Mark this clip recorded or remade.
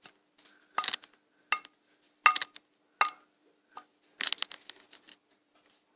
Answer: recorded